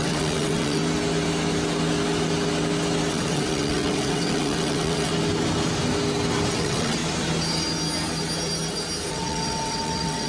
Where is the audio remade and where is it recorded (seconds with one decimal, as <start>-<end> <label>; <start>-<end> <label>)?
0.0-0.8 remade; 0.8-3.1 recorded; 3.1-5.1 remade; 5.1-6.5 recorded; 6.5-7.0 remade; 7.0-9.1 recorded; 9.1-10.3 remade